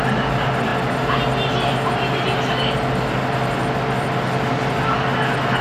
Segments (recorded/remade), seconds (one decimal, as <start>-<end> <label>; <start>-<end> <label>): 0.0-5.6 recorded